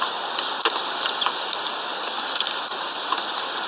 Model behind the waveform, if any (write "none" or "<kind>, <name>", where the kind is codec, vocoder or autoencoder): none